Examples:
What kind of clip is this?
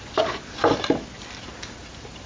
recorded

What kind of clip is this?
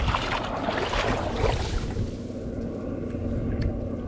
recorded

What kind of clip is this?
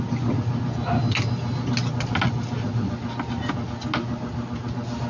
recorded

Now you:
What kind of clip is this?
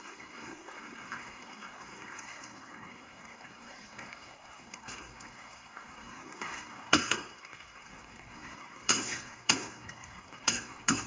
remade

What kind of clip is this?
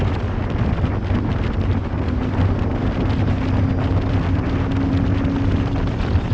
recorded